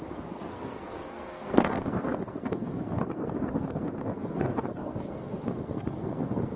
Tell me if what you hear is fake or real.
fake